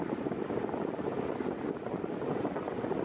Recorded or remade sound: recorded